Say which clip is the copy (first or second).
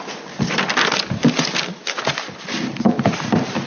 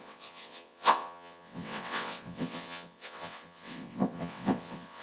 second